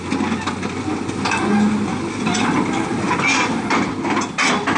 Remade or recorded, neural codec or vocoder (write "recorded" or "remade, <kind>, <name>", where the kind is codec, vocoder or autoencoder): recorded